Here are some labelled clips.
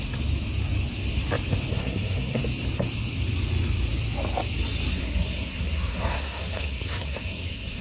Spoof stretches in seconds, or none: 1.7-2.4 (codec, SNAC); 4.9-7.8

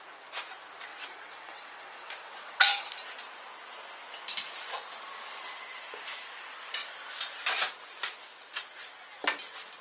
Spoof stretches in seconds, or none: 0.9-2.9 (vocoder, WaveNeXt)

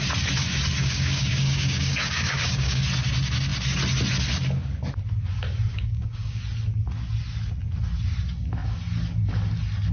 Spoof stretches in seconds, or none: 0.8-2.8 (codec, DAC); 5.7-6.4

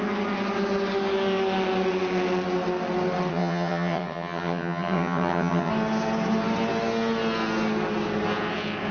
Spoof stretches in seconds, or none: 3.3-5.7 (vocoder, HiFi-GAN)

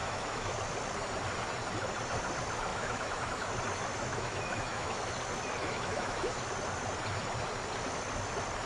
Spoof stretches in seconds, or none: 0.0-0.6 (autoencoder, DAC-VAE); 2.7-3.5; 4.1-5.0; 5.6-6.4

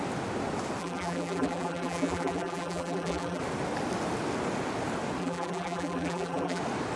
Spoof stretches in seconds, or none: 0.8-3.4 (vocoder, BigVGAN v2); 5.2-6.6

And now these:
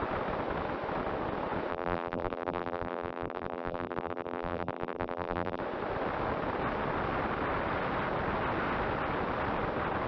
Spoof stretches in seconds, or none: 1.7-5.6 (vocoder, BigVGAN v2)

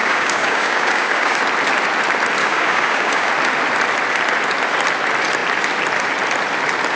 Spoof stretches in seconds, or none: 0.0-1.4 (codec, DAC); 2.4-3.3